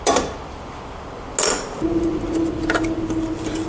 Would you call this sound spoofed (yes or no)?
no